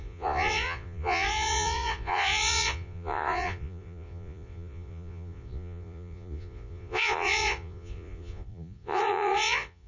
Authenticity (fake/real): fake